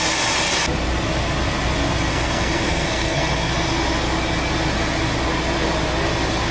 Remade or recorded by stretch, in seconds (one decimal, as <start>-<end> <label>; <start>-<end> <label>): 0.0-2.1 recorded; 2.1-3.5 remade; 3.5-6.5 recorded